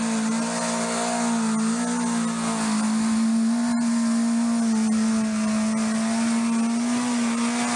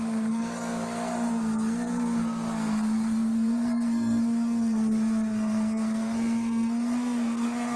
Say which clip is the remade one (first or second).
second